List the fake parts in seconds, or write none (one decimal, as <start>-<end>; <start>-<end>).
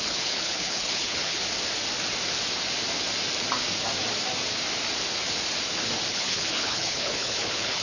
0.0-1.4; 6.1-7.8